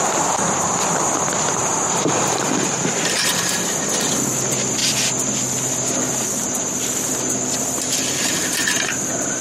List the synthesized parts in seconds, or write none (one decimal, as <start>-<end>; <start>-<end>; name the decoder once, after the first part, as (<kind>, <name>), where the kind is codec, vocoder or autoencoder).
1.6-2.8 (vocoder, BigVGAN v2)